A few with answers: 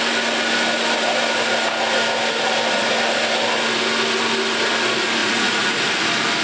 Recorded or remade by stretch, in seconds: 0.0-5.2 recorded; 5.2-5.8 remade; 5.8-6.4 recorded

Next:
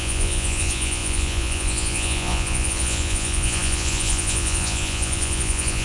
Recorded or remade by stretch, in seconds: 0.0-5.8 remade

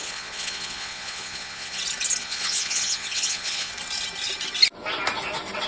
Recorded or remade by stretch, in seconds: 0.0-1.8 remade; 1.8-2.2 recorded; 2.2-3.7 remade; 3.7-5.7 recorded

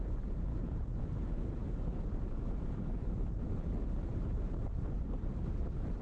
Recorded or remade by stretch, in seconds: 0.0-0.5 recorded; 0.5-1.0 remade; 1.0-6.0 recorded

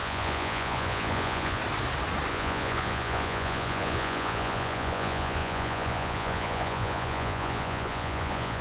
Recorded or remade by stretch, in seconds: 0.0-1.6 remade; 1.6-2.3 recorded; 2.3-8.6 remade

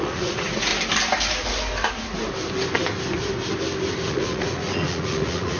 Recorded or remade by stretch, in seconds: 0.0-0.7 remade; 0.7-4.1 recorded; 4.1-5.6 remade

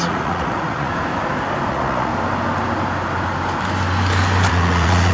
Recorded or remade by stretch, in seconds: 0.0-0.9 remade; 0.9-1.7 recorded; 1.7-2.1 remade; 2.1-4.5 recorded; 4.5-5.1 remade